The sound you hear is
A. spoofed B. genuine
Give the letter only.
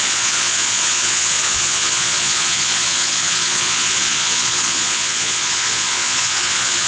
A